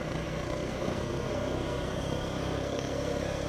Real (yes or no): no